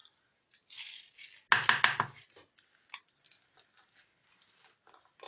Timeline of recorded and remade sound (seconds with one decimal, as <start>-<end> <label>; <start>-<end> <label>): 0.0-5.3 recorded